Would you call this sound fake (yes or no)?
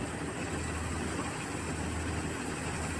no